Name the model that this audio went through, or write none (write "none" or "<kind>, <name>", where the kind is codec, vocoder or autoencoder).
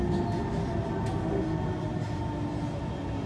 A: none